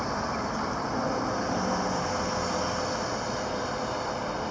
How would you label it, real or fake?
real